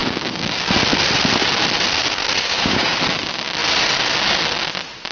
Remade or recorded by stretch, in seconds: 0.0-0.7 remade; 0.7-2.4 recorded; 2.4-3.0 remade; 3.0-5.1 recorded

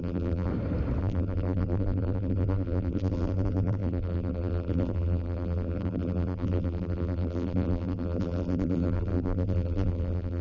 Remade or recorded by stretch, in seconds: 0.0-0.5 remade; 0.5-1.0 recorded; 1.0-10.4 remade

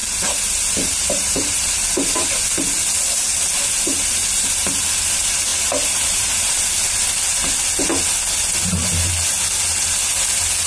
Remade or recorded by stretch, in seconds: 0.0-1.0 recorded; 1.0-1.6 remade; 1.6-5.5 recorded; 5.5-6.6 remade; 6.6-10.7 recorded